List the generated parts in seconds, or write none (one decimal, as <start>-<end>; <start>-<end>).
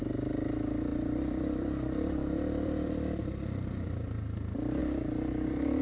0.9-3.9